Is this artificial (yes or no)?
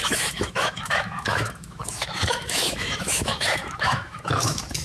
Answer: yes